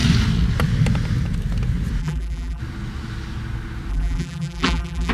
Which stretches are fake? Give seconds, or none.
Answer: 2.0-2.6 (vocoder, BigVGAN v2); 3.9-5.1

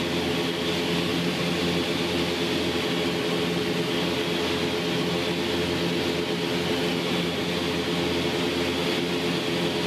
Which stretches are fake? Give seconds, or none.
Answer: 1.1-1.6 (vocoder, BigVGAN v2); 6.9-7.6

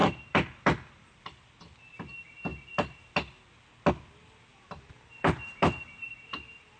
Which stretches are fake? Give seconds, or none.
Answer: 0.0-1.2 (vocoder, BigVGAN v2); 4.5-6.1

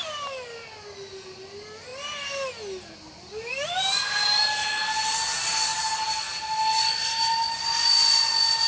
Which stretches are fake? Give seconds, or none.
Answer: none

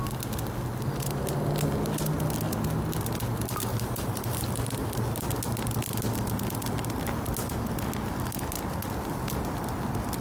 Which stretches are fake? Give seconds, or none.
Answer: 3.7-4.5 (vocoder, BigVGAN v2)